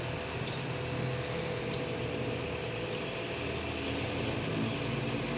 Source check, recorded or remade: recorded